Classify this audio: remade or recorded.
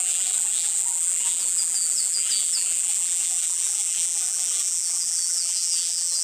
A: remade